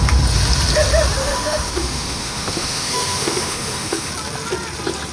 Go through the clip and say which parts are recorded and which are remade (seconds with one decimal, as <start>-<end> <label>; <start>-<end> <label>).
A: 0.0-1.2 recorded; 1.2-4.1 remade; 4.1-5.1 recorded